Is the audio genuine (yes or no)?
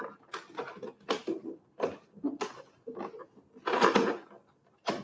yes